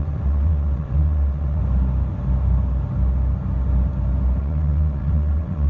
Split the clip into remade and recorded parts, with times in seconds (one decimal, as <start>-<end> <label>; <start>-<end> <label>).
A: 0.0-1.6 remade; 1.6-4.4 recorded; 4.4-5.7 remade